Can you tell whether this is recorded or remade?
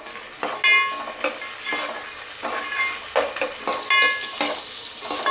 recorded